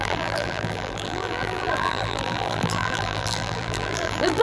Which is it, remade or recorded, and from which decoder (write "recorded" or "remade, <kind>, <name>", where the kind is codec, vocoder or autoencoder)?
remade, vocoder, BigVGAN v2